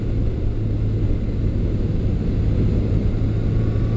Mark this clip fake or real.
real